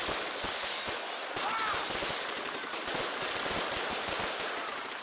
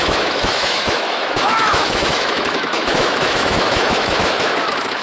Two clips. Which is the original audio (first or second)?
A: first